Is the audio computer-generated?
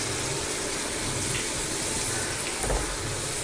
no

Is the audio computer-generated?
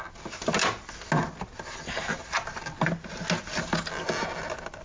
no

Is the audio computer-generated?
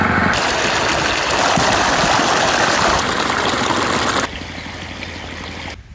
no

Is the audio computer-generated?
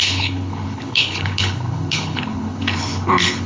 yes